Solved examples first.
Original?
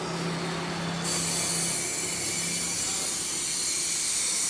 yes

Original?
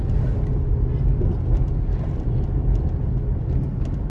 yes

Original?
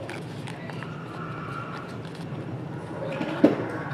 yes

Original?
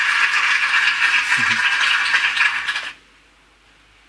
yes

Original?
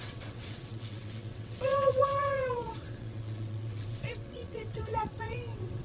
no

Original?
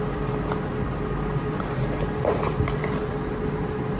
yes